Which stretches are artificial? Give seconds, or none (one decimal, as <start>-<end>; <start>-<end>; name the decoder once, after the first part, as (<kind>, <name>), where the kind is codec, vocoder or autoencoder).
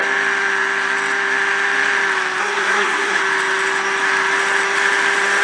2.4-3.2 (codec, SNAC)